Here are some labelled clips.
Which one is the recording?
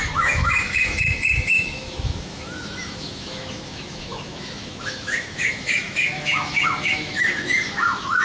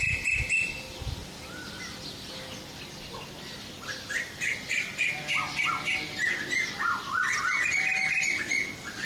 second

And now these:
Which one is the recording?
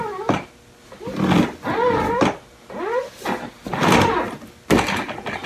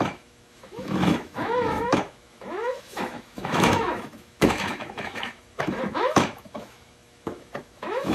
first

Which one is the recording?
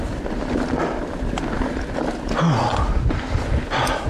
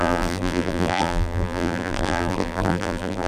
first